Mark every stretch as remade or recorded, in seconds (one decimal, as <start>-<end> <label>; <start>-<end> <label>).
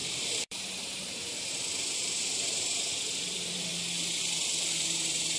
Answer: 0.0-3.7 remade; 3.7-4.6 recorded; 4.6-5.4 remade